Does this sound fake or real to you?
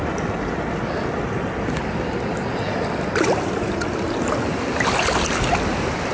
real